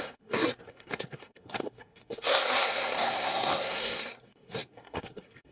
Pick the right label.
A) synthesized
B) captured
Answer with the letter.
A